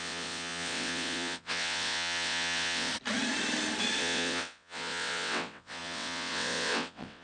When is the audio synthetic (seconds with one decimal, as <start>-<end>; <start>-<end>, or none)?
0.0-2.9; 4.0-7.2